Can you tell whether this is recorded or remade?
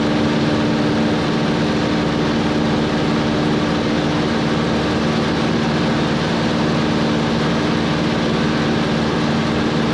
recorded